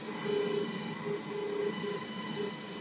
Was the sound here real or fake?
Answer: real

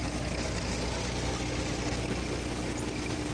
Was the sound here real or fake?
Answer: real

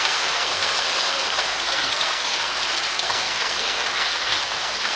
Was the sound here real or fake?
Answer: fake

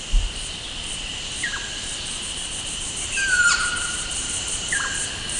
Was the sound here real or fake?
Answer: fake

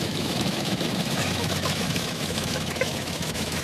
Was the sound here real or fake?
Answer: fake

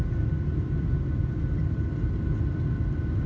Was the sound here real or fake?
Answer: real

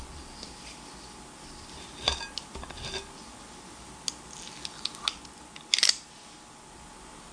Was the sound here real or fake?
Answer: real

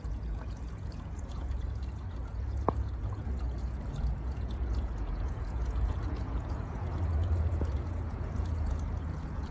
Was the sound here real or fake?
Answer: fake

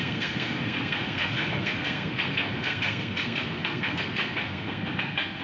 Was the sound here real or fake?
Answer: fake